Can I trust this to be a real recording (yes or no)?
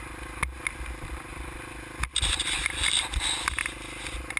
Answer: yes